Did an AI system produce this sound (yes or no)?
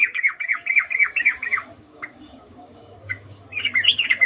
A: yes